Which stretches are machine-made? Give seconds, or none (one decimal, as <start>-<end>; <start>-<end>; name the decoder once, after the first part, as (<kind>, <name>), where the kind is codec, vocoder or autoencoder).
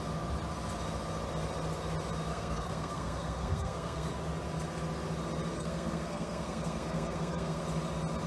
2.3-4.1 (codec, SNAC); 5.5-7.6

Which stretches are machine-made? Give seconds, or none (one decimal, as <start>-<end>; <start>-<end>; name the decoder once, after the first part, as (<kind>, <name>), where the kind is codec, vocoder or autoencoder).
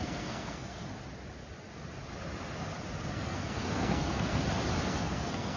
0.0-0.8 (codec, SNAC); 3.1-4.4; 4.9-5.6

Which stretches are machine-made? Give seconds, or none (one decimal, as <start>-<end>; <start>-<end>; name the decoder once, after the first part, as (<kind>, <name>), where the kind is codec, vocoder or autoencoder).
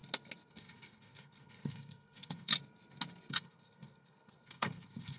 0.5-2.5 (codec, SNAC); 3.3-5.2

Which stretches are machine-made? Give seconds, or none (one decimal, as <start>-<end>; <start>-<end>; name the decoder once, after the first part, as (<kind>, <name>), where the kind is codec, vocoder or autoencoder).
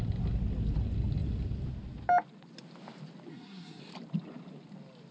3.3-3.8 (codec, SNAC)